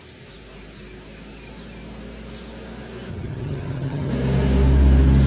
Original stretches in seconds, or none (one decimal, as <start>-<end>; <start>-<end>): 0.0-3.1; 4.1-5.3